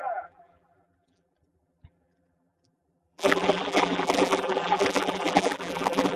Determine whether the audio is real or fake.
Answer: fake